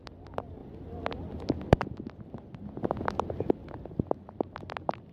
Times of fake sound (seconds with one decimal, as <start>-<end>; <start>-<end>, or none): none